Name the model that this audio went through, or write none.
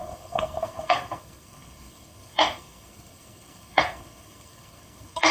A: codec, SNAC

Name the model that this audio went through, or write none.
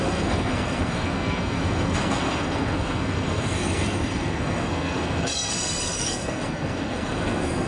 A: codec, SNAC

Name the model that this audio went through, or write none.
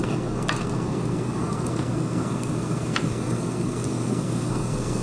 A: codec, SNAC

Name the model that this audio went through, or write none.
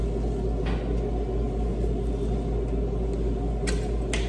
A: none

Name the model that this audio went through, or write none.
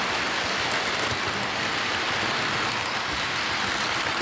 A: none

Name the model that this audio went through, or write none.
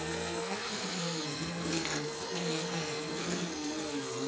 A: codec, SNAC